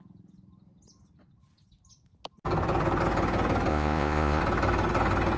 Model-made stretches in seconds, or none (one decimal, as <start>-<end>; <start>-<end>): 3.7-4.4